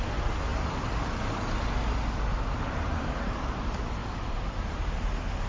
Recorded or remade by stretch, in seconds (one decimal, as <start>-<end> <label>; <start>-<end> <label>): 0.0-2.3 recorded; 2.3-3.6 remade; 3.6-4.0 recorded; 4.0-4.6 remade; 4.6-5.5 recorded